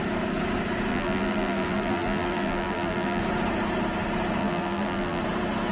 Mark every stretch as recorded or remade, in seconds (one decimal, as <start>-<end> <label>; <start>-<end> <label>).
0.0-0.9 recorded; 0.9-3.2 remade; 3.2-4.4 recorded; 4.4-5.2 remade; 5.2-5.7 recorded